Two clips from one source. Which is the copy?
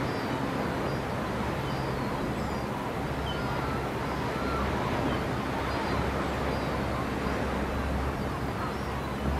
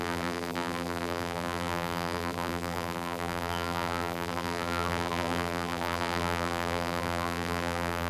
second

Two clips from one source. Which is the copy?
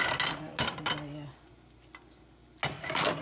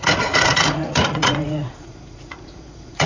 second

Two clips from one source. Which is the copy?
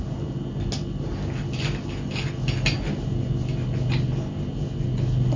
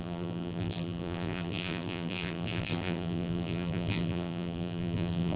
second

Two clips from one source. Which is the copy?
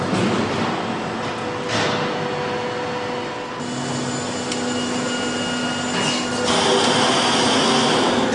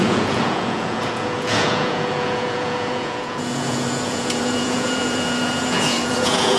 second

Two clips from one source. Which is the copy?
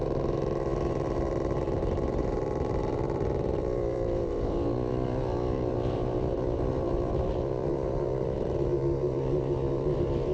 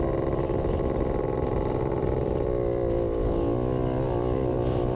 first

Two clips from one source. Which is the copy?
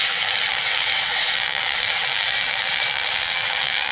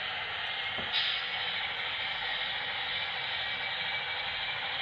first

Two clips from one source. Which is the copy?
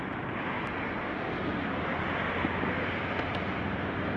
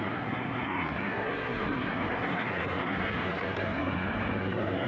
second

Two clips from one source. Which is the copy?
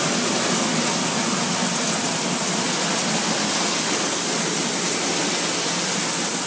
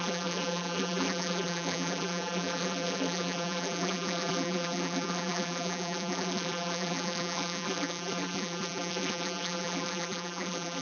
second